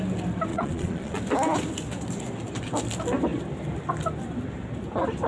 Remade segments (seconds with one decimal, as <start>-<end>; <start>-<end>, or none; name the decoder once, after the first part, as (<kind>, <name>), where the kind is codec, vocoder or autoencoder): 0.5-1.2 (vocoder, Vocos)